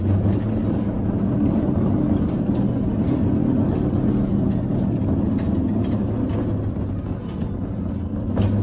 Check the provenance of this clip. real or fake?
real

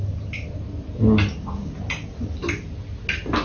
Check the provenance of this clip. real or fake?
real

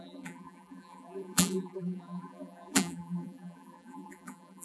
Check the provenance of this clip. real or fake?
fake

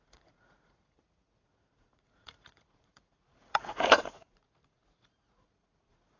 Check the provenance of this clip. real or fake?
fake